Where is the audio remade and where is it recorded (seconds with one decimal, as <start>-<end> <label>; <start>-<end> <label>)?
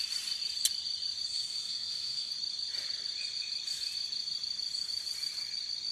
0.0-1.3 recorded; 1.3-2.3 remade; 2.3-5.9 recorded